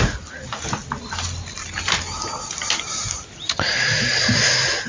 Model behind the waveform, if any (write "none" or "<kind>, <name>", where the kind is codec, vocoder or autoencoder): none